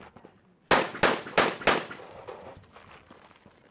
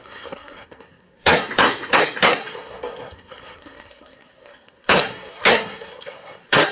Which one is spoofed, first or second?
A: second